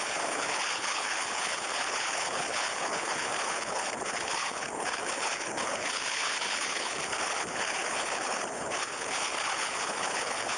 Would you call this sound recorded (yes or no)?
no